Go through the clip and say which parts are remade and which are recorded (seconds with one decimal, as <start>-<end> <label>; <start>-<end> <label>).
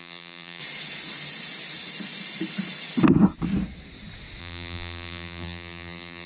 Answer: 0.0-0.6 remade; 0.6-4.4 recorded; 4.4-6.3 remade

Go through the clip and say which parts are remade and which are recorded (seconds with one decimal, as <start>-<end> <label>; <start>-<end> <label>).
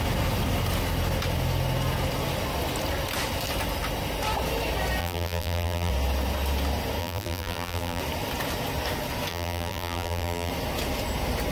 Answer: 0.0-5.0 recorded; 5.0-5.9 remade; 5.9-7.0 recorded; 7.0-8.0 remade; 8.0-9.3 recorded; 9.3-10.5 remade; 10.5-11.5 recorded